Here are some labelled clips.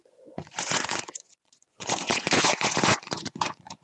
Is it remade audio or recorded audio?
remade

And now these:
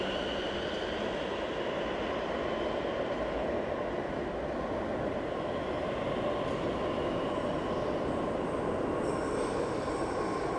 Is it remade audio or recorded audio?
recorded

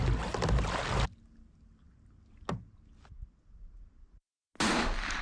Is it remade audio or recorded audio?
recorded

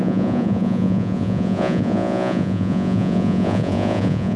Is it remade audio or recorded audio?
remade